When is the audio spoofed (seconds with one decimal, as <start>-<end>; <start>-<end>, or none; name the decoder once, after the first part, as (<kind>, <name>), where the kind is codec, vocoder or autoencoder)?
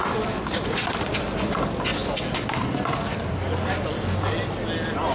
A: none